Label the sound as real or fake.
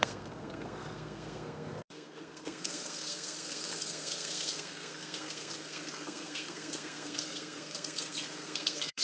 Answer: fake